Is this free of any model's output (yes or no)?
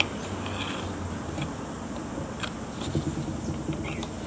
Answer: yes